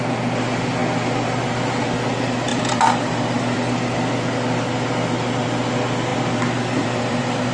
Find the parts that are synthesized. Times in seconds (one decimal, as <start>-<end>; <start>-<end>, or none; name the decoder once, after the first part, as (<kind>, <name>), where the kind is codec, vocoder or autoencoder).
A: 2.5-3.7 (vocoder, BigVGAN v2); 6.1-7.5